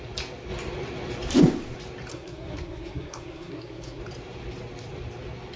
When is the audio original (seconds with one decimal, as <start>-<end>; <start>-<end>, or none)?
0.0-2.1; 4.0-5.6